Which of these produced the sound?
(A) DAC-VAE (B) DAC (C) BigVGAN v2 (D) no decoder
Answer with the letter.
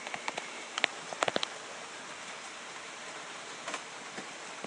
D